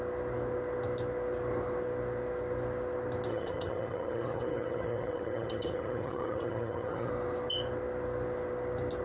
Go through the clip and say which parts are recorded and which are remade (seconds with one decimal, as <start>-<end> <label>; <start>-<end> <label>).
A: 0.0-3.3 recorded; 3.3-7.1 remade; 7.1-9.0 recorded